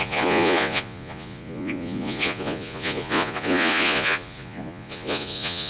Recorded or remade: remade